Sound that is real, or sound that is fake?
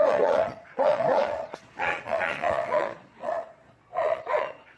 fake